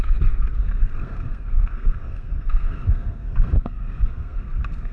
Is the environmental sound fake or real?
fake